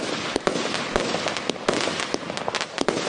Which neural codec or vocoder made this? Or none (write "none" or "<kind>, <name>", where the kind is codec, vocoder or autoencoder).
none